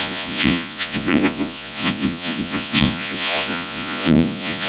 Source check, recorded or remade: remade